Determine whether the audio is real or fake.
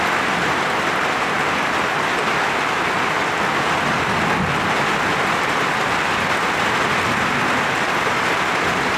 real